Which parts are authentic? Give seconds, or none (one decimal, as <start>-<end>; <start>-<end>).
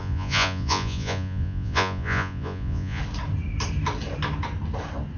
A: 3.0-5.2